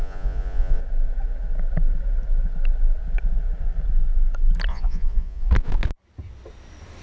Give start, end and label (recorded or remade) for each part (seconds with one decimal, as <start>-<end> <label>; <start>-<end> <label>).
0.0-0.8 remade; 0.8-4.7 recorded; 4.7-5.5 remade; 5.5-7.0 recorded